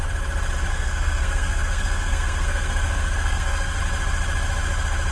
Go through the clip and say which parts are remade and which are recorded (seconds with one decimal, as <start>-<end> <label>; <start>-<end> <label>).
0.0-0.7 recorded; 0.7-3.8 remade; 3.8-5.1 recorded